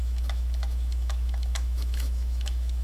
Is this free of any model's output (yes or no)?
no